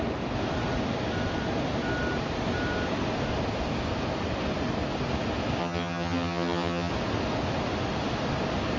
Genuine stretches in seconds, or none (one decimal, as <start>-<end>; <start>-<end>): 0.0-5.6; 6.9-8.8